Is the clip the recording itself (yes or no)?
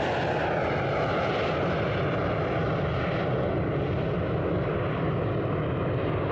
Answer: yes